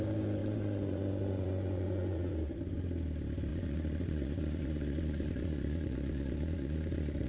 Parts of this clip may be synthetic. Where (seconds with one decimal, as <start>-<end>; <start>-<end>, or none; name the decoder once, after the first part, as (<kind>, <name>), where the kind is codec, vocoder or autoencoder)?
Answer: 0.4-2.3 (vocoder, Vocos); 3.5-7.3